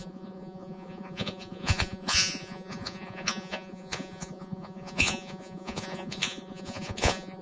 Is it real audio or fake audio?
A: fake